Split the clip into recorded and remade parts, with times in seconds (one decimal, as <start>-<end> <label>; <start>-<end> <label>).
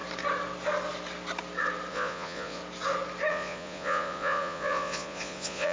0.0-1.9 recorded; 1.9-2.6 remade; 2.6-3.3 recorded; 3.3-5.7 remade